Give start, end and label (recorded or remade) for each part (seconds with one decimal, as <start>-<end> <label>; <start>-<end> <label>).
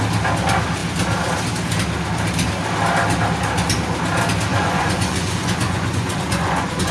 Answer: 0.0-4.5 recorded; 4.5-6.9 remade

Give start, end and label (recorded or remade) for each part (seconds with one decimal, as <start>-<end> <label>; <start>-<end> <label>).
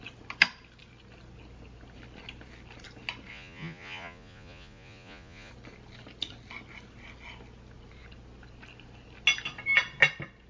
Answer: 0.0-3.3 recorded; 3.3-5.5 remade; 5.5-10.5 recorded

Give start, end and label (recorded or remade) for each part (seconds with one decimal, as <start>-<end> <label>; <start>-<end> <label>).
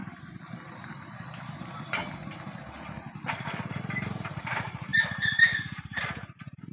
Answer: 0.0-2.0 remade; 2.0-3.8 recorded; 3.8-6.7 remade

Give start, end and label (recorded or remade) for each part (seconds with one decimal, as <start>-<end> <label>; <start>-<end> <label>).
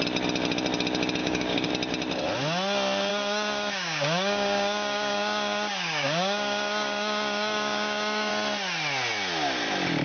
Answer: 0.0-1.2 recorded; 1.2-1.7 remade; 1.7-3.1 recorded; 3.1-8.3 remade; 8.3-10.0 recorded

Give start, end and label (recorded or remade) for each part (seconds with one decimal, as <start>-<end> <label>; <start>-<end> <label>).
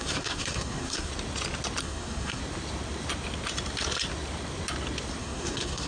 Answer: 0.0-1.1 remade; 1.1-1.8 recorded; 1.8-2.4 remade; 2.4-5.2 recorded; 5.2-5.9 remade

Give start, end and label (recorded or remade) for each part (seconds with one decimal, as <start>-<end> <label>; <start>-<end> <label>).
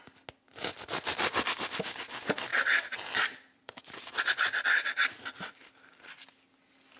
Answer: 0.0-2.5 recorded; 2.5-5.9 remade; 5.9-7.0 recorded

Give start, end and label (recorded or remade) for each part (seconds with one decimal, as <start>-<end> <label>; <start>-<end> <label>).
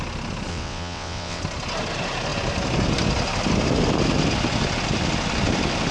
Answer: 0.0-0.5 recorded; 0.5-1.4 remade; 1.4-5.9 recorded